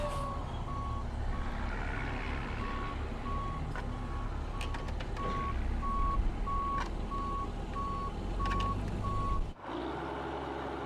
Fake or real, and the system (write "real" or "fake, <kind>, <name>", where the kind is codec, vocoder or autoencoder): real